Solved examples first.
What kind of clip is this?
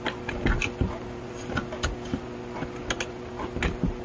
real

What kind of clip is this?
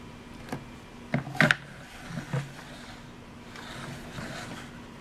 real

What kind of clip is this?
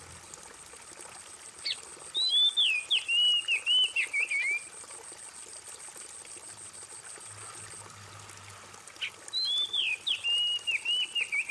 real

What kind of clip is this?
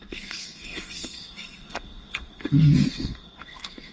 fake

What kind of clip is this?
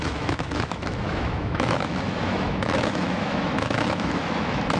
fake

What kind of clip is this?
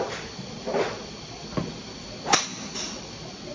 real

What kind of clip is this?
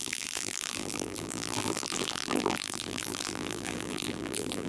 fake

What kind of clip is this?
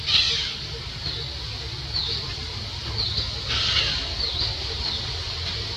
real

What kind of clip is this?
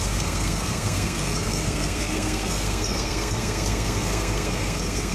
fake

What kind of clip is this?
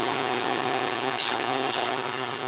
fake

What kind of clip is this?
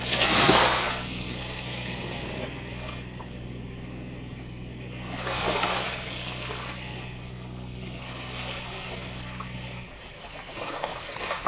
fake